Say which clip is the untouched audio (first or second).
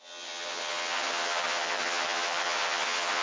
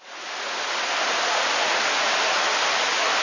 second